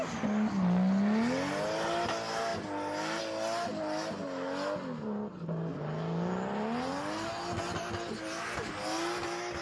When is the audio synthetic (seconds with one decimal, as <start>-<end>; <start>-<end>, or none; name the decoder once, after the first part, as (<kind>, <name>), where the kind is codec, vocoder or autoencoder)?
none